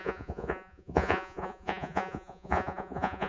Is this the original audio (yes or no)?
no